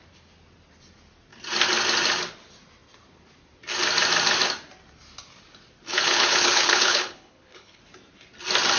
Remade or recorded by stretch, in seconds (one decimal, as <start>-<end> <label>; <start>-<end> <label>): 0.0-5.9 recorded; 5.9-7.8 remade; 7.8-8.8 recorded